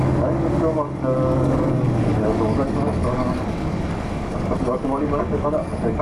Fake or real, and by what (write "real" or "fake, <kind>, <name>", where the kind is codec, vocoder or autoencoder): fake, codec, DAC